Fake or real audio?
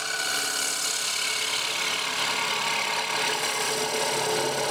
real